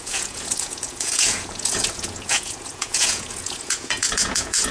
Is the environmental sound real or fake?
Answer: fake